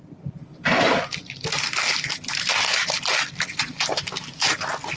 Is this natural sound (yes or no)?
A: yes